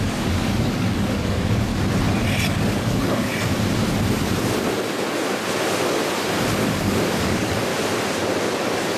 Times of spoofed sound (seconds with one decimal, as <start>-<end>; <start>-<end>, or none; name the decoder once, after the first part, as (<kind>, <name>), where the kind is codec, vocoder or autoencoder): 0.0-1.7 (codec, DAC); 2.5-3.3; 6.6-7.7; 8.6-9.0